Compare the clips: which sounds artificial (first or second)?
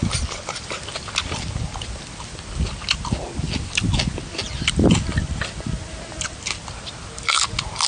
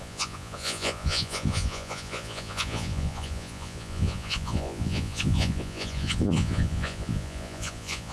second